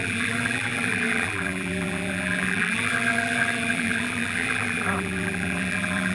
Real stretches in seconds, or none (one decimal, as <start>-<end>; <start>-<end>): none